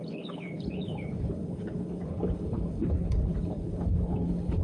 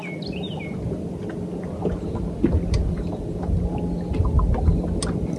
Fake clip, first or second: first